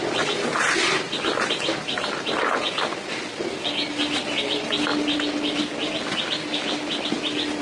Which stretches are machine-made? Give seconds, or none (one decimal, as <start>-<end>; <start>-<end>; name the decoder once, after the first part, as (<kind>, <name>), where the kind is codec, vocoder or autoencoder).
none

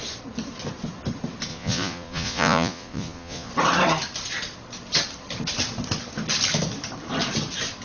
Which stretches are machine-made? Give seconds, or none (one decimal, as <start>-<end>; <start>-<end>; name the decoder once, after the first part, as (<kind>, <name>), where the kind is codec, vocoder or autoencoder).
1.5-3.5 (vocoder, Vocos)

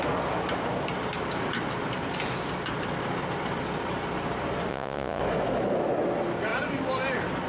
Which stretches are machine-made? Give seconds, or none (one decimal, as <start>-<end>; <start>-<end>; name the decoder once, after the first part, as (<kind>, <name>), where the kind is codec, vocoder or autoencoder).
4.7-5.2 (vocoder, Vocos)